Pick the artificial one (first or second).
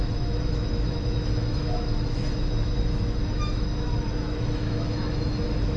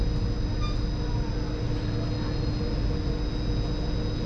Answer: first